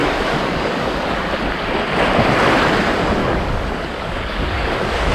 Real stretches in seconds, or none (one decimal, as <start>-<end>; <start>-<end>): 1.3-3.2

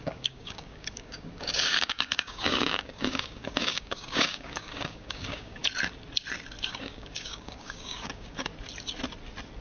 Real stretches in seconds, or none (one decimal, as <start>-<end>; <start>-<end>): 5.6-6.6; 8.5-9.6

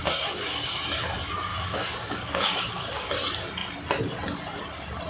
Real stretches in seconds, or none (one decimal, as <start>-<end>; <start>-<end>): 0.7-1.5; 3.1-5.1

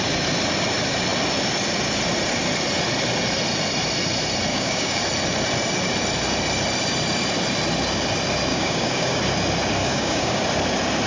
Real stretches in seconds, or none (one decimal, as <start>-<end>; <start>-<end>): 0.0-4.5; 5.0-8.5; 9.2-9.8; 10.4-11.1

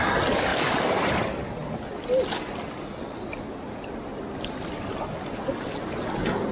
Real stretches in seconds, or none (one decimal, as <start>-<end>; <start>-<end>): 0.0-6.5